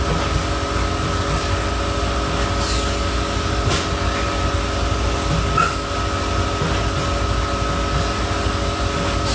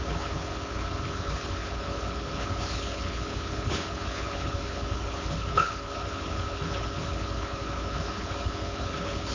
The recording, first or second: first